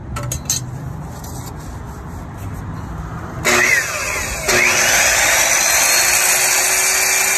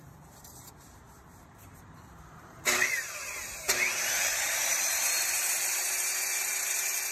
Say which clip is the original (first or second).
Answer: first